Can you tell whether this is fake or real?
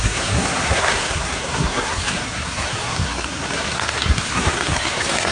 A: fake